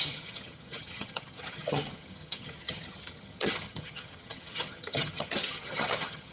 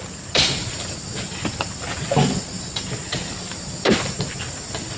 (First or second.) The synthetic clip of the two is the first